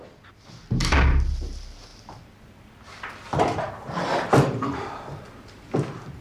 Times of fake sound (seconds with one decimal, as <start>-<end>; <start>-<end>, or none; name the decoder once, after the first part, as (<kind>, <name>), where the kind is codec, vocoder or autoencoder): 1.9-5.6 (vocoder, BigVGAN v2)